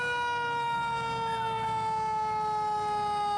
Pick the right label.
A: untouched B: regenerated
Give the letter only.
A